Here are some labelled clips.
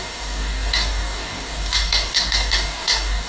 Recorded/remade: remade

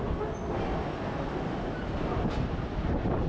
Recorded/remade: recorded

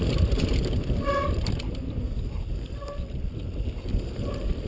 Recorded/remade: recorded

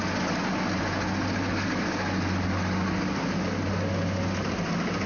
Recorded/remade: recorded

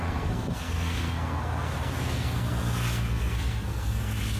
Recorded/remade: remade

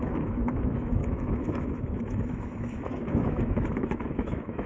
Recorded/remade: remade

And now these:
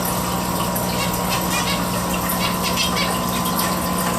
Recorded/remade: recorded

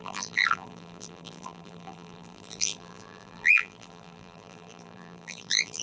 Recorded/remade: remade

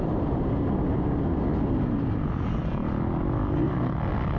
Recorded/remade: recorded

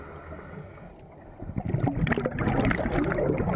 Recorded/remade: recorded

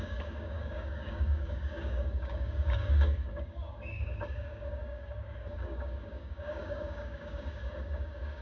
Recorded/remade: remade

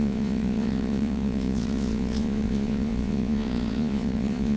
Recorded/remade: remade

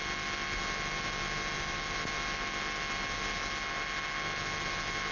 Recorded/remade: recorded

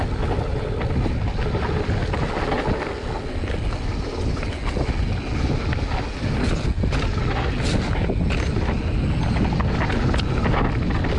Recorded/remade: recorded